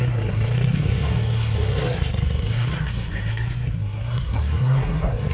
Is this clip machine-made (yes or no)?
yes